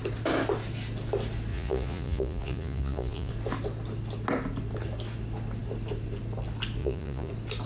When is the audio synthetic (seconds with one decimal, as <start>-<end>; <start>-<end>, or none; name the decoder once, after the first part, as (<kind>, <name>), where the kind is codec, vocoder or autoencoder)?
1.5-3.3 (vocoder, Vocos); 6.8-7.3